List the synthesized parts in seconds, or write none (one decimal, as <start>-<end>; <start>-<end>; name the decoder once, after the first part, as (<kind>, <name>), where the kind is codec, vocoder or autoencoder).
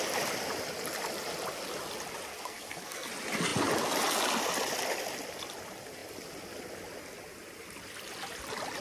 2.3-3.1 (codec, SNAC)